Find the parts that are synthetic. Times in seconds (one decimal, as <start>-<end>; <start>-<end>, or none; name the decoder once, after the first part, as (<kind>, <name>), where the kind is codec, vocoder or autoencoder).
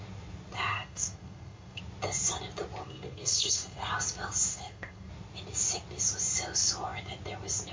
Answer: 0.7-1.8 (codec, SNAC); 2.8-3.9; 4.5-5.1